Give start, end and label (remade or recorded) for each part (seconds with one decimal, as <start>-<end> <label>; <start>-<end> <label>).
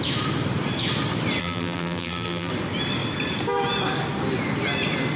0.0-1.4 recorded; 1.4-2.5 remade; 2.5-5.2 recorded